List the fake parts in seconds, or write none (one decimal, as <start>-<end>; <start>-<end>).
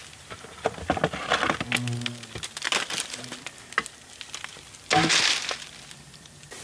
none